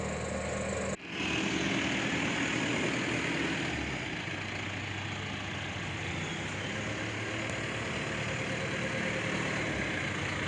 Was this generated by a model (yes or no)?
no